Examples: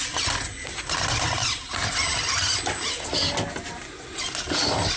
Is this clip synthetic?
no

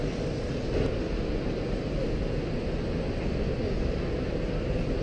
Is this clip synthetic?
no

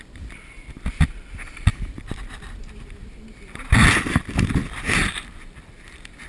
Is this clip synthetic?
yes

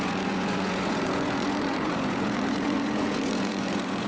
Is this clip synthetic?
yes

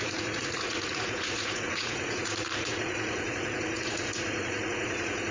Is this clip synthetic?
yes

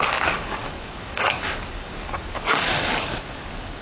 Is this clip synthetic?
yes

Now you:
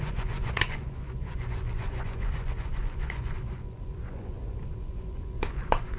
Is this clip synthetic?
yes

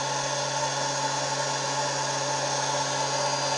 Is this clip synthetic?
no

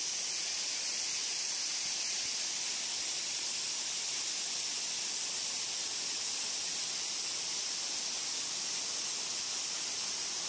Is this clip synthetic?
no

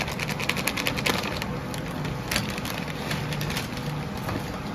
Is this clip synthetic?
no